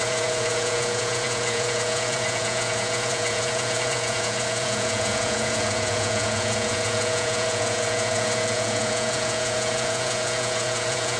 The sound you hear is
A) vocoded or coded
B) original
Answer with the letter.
A